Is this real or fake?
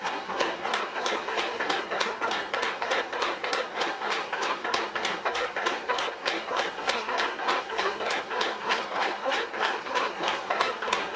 fake